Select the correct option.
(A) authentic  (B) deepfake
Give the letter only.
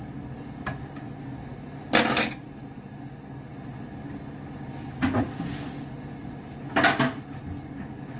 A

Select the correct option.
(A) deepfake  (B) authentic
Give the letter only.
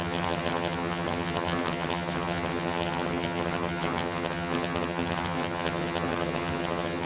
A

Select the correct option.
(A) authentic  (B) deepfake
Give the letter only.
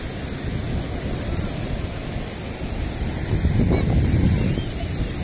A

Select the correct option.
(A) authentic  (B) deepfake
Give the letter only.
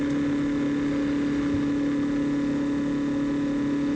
A